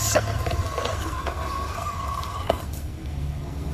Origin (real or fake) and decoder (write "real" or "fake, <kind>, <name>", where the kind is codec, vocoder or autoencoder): fake, codec, SNAC